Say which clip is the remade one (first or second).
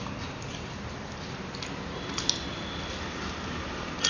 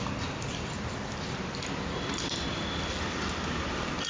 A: second